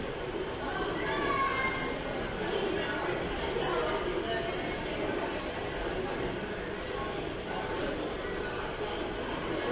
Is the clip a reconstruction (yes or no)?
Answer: no